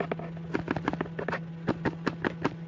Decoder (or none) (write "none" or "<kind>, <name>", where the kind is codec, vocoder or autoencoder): none